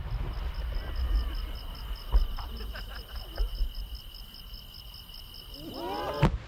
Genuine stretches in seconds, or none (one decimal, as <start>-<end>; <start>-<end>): 0.0-6.5